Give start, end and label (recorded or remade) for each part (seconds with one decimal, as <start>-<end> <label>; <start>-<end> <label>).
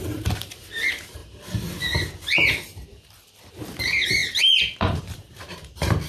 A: 0.0-1.2 remade; 1.2-3.5 recorded; 3.5-6.1 remade